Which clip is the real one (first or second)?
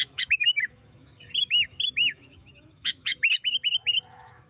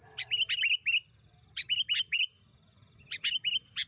second